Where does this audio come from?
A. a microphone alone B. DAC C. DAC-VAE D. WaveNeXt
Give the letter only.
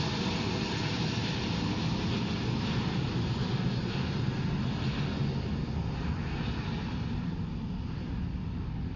A